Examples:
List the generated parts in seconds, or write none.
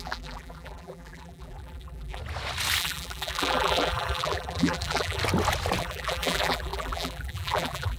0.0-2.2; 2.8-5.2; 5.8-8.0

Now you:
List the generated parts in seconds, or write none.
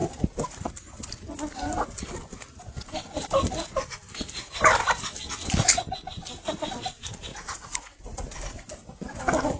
7.3-8.2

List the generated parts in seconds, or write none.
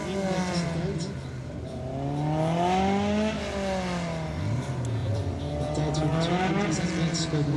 5.0-5.5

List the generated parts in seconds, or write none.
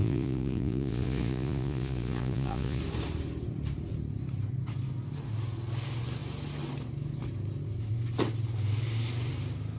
0.0-2.8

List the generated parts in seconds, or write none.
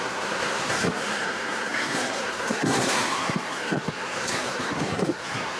0.0-5.6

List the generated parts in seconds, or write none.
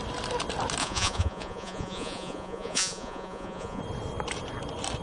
0.8-3.8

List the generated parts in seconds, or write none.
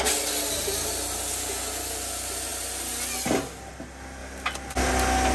none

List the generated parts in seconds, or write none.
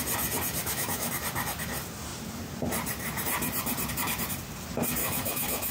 0.6-1.1; 5.0-5.7